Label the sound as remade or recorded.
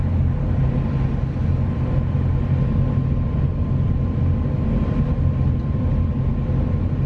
recorded